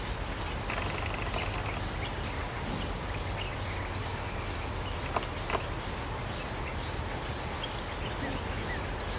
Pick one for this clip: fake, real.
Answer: real